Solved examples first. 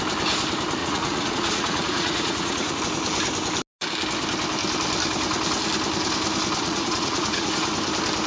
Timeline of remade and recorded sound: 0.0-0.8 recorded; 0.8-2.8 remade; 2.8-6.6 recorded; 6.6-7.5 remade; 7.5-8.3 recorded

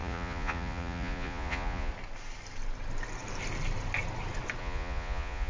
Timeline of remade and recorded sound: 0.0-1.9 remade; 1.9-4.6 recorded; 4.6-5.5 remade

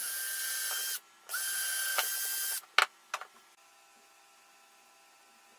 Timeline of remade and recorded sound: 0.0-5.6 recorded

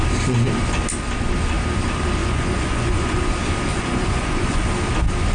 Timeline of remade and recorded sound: 0.0-2.2 recorded; 2.2-3.2 remade; 3.2-3.7 recorded; 3.7-4.6 remade; 4.6-5.3 recorded